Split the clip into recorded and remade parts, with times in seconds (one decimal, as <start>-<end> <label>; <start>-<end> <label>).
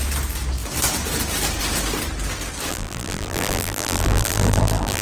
0.0-2.7 recorded; 2.7-5.0 remade